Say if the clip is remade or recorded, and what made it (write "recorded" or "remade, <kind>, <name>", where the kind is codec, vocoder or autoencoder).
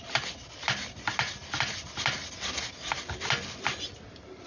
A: recorded